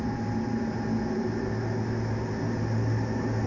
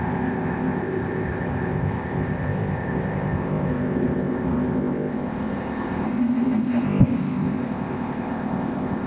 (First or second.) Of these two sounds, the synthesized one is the second